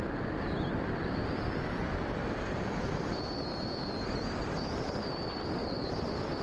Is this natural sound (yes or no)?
yes